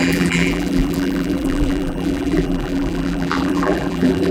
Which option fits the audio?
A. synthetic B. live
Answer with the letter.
A